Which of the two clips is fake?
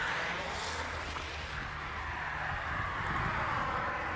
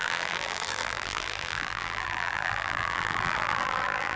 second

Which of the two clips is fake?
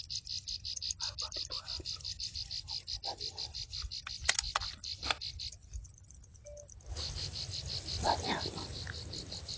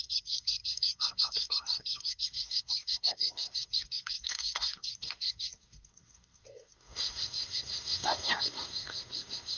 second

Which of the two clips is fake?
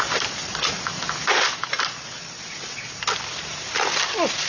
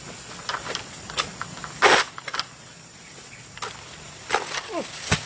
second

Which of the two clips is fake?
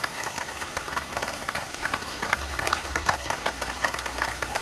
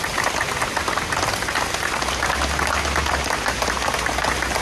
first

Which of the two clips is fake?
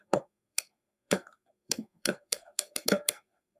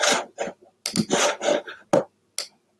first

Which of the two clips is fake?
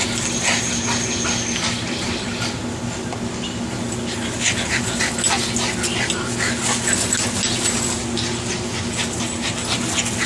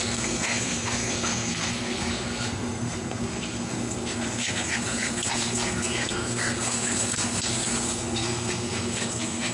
second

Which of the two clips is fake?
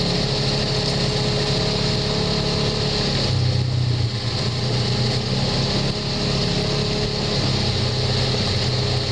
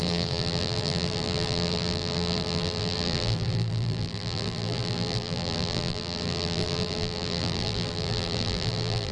second